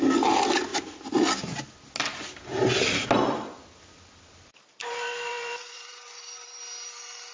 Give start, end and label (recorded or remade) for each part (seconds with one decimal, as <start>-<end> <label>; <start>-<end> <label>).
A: 0.0-4.5 recorded; 4.5-6.6 remade; 6.6-7.3 recorded